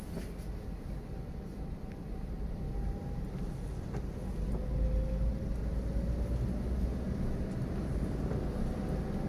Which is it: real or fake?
real